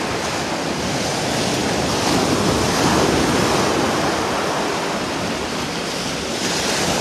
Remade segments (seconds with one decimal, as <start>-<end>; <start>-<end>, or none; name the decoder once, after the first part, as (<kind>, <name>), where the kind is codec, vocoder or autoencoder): none